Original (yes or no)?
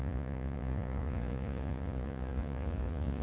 no